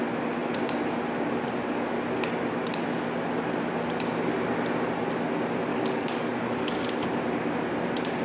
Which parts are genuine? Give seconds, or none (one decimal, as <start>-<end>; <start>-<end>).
0.0-5.7; 6.9-8.2